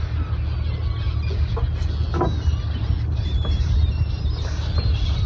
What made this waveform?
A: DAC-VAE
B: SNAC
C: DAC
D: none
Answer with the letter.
D